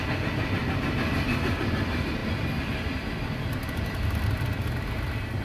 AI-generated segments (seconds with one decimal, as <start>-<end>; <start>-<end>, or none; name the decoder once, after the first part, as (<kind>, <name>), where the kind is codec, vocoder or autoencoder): none